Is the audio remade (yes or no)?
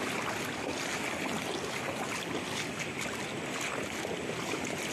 no